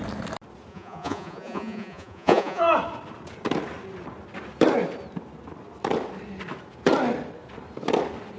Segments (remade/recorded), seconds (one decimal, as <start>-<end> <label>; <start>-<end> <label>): 0.0-0.7 recorded; 0.7-2.6 remade; 2.6-8.4 recorded